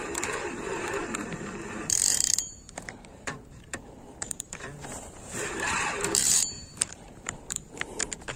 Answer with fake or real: fake